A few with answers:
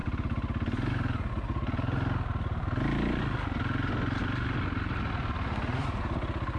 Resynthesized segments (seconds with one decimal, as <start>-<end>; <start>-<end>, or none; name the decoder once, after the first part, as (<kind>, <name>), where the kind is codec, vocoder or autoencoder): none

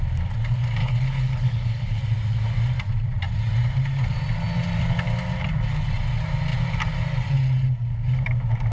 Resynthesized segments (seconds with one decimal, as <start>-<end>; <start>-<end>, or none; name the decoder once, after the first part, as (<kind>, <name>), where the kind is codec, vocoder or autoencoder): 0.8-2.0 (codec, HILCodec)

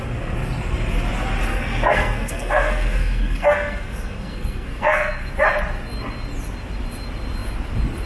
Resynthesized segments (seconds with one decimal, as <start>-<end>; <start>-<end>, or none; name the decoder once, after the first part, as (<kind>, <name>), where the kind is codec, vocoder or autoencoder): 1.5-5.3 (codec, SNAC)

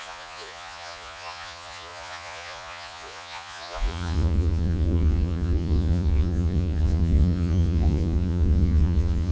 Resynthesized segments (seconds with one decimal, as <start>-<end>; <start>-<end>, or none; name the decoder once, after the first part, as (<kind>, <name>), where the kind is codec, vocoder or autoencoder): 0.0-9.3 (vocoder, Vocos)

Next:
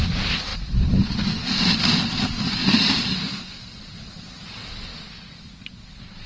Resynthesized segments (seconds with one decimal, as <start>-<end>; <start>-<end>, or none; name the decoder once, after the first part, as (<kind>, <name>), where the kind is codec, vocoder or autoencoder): 0.0-4.9 (vocoder, BigVGAN v2); 5.8-6.3